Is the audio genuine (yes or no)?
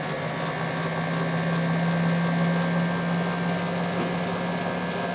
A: yes